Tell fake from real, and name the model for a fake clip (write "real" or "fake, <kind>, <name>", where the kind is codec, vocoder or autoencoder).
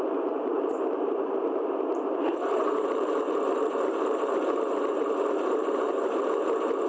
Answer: fake, vocoder, BigVGAN v2